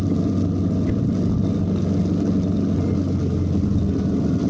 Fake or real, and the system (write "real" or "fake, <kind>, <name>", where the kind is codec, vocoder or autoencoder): real